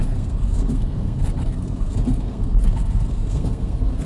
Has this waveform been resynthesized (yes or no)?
yes